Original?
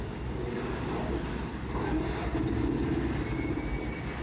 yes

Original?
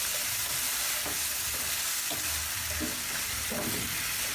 yes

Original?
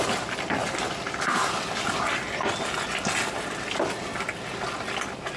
yes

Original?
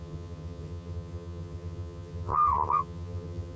no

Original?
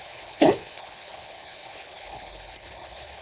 no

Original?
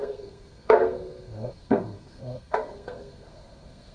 no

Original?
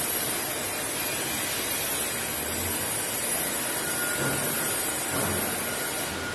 yes